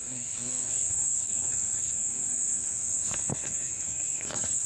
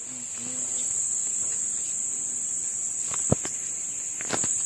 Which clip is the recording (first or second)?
second